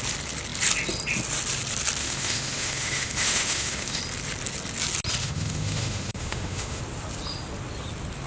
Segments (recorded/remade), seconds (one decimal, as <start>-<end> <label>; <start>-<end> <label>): 0.0-2.0 recorded; 2.0-4.0 remade; 4.0-5.2 recorded; 5.2-6.8 remade; 6.8-8.3 recorded